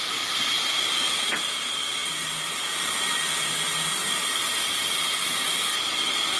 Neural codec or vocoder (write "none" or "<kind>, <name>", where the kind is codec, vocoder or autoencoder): none